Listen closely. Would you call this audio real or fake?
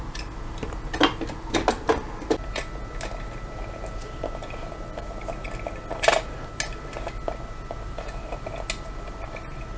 real